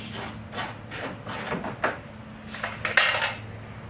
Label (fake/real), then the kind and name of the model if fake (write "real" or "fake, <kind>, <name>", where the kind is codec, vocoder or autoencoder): real